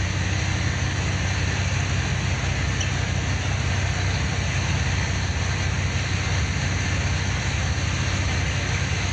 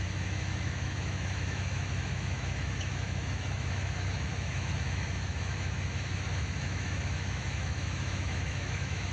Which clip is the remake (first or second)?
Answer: second